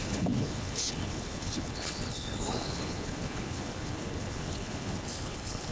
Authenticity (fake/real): fake